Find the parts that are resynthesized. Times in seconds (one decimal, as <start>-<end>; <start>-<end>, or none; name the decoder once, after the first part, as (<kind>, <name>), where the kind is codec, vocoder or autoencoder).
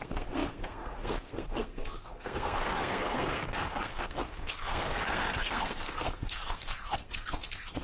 0.0-7.8 (codec, SNAC)